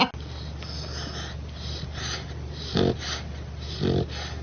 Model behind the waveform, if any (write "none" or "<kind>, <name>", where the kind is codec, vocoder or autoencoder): none